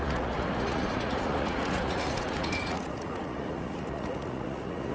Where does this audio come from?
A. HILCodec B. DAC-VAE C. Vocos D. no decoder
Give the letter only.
C